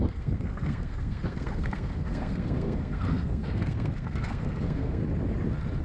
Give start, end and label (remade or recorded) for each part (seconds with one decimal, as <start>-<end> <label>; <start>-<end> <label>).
0.0-5.0 remade; 5.0-5.8 recorded